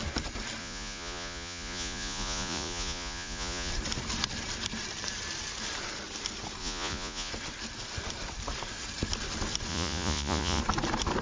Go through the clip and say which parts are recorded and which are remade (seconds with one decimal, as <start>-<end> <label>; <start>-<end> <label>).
0.0-0.6 recorded; 0.6-3.7 remade; 3.7-6.6 recorded; 6.6-7.3 remade; 7.3-9.7 recorded; 9.7-10.6 remade; 10.6-11.2 recorded